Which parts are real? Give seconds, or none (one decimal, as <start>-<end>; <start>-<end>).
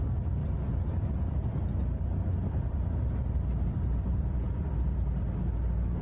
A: 0.0-1.8; 5.4-6.0